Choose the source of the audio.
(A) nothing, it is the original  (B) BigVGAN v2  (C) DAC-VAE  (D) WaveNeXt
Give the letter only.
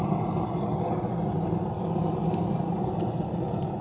A